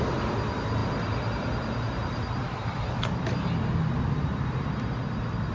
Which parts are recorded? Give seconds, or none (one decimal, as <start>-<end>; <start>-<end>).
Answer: 0.0-5.5